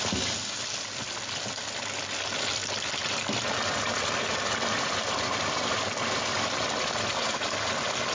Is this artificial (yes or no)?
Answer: no